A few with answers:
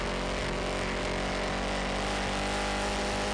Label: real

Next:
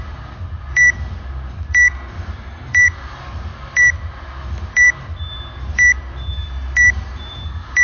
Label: fake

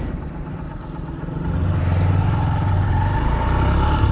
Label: real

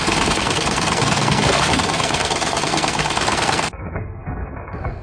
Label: fake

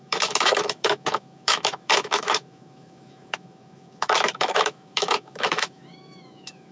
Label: fake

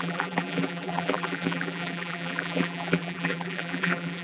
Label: fake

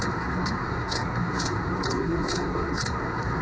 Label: fake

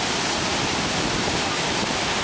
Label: real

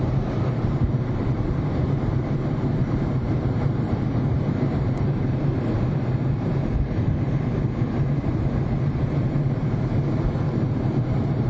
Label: fake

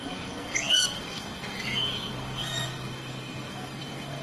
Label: fake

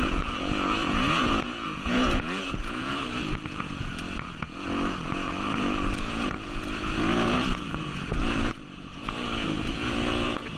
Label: fake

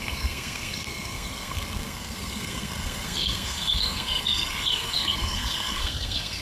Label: fake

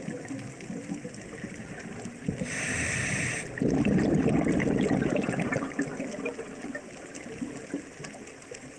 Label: real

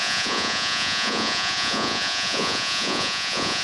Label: fake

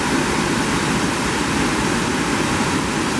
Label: real